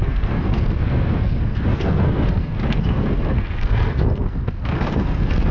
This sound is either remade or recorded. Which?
remade